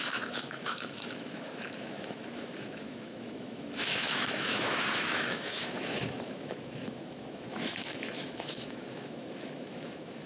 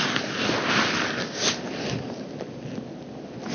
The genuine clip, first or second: second